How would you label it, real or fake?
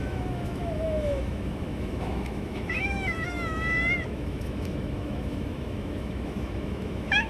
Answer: fake